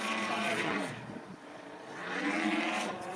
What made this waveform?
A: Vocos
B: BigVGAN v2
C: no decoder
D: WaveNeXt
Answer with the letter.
A